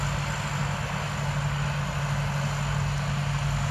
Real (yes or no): yes